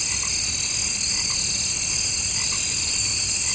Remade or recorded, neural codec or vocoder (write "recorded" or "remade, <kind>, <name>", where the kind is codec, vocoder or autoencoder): recorded